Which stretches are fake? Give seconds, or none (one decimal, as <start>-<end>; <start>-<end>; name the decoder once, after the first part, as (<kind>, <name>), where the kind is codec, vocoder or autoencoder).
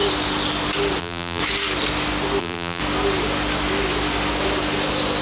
1.0-1.4 (vocoder, BigVGAN v2); 2.4-2.8